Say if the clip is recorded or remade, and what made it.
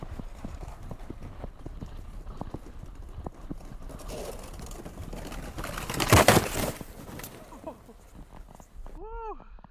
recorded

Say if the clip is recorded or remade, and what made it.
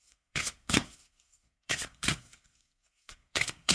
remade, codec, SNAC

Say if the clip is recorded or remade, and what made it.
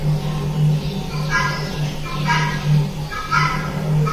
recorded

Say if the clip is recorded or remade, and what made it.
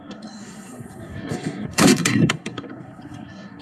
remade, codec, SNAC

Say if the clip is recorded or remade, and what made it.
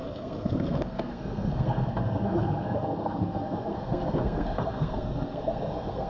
remade, codec, SNAC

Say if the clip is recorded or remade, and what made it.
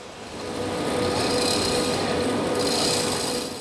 recorded